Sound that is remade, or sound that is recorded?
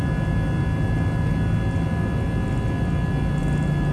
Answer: recorded